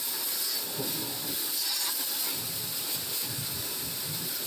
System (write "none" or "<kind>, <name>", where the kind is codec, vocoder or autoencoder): none